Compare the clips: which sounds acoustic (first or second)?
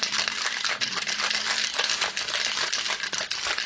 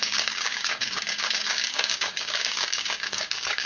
first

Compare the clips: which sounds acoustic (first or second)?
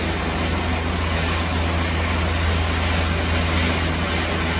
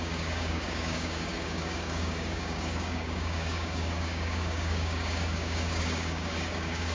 first